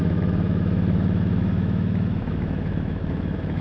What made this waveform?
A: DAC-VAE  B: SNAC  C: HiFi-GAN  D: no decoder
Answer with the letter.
A